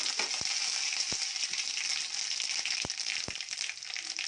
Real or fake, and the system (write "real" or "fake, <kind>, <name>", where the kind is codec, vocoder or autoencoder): real